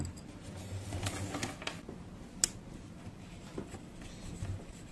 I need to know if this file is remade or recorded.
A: recorded